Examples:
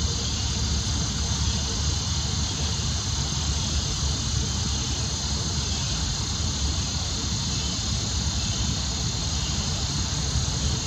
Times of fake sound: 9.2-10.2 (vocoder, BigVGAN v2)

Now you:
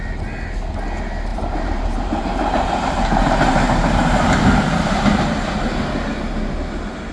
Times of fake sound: 1.3-5.6 (vocoder, BigVGAN v2)

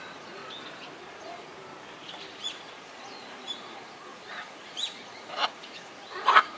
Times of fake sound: 0.0-0.4 (vocoder, Vocos); 1.0-1.5; 2.4-6.6

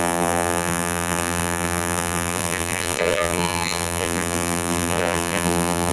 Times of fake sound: 0.0-5.9 (vocoder, BigVGAN v2)

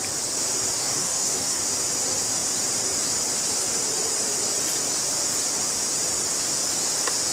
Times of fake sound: 0.8-1.6 (codec, DAC)

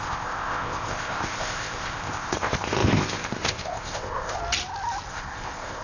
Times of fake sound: 0.0-4.4 (codec, ZipCodec); 5.1-5.8

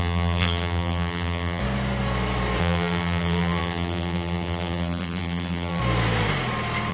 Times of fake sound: 0.0-1.6 (vocoder, BigVGAN v2); 2.6-5.8